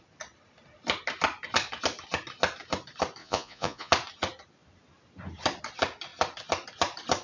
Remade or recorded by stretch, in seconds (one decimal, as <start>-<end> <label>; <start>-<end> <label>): 0.0-3.2 recorded; 3.2-3.9 remade; 3.9-7.2 recorded